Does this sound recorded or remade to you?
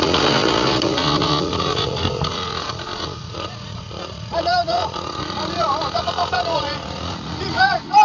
remade